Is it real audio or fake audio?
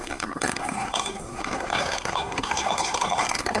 fake